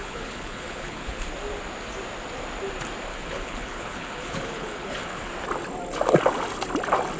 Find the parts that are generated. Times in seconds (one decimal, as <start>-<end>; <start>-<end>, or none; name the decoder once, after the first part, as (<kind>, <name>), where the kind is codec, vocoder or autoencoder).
0.0-1.3 (codec, HILCodec); 3.1-5.3